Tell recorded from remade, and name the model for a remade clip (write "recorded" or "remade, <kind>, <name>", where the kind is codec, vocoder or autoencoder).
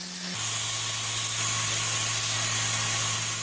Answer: recorded